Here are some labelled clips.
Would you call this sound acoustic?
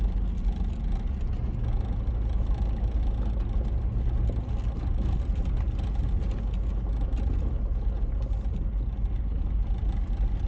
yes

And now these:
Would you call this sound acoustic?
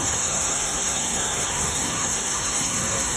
no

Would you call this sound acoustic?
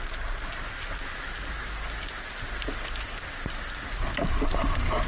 yes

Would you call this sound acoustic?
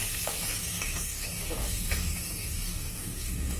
no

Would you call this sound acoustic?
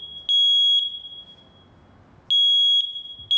yes